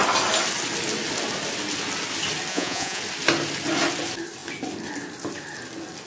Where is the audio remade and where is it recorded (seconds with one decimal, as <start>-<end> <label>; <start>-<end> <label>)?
0.0-2.5 recorded; 2.5-3.0 remade; 3.0-6.1 recorded